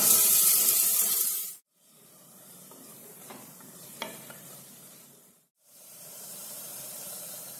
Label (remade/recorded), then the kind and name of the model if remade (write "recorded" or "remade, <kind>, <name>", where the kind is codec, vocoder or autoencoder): remade, vocoder, BigVGAN v2